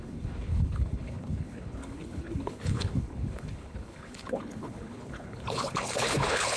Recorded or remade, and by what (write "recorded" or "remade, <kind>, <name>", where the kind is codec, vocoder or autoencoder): remade, codec, HILCodec